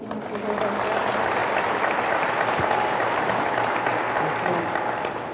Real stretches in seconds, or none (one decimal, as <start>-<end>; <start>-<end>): 0.0-5.3